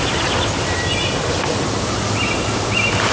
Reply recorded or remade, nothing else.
recorded